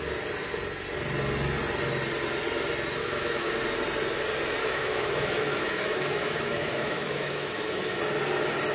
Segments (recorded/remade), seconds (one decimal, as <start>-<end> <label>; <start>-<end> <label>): 0.0-3.0 recorded; 3.0-3.5 remade; 3.5-4.6 recorded; 4.6-8.0 remade; 8.0-8.7 recorded